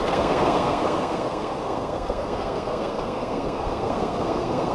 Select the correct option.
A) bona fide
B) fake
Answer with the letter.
B